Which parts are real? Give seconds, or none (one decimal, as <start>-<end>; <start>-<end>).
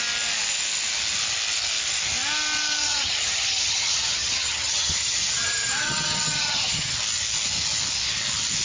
0.0-2.8; 7.0-8.6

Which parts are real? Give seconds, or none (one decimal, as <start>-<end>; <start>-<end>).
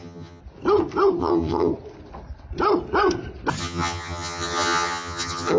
0.4-1.2; 1.7-3.6